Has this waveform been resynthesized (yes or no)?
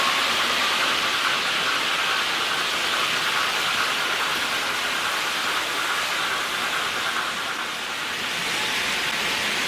no